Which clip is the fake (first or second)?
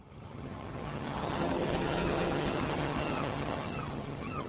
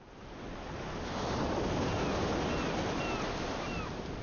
first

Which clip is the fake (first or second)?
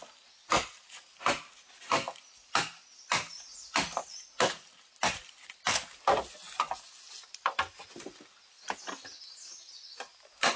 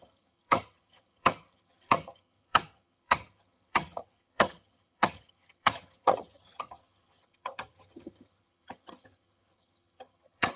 second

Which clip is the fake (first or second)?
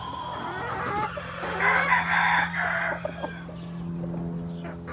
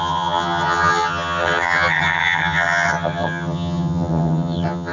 second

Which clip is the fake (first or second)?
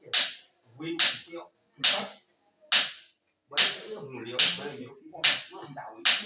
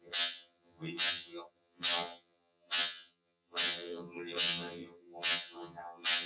second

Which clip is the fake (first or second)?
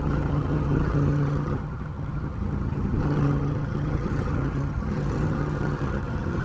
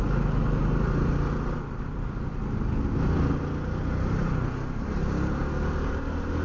first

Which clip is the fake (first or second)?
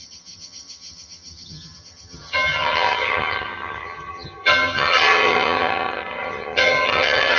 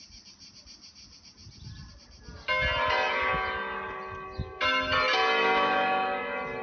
first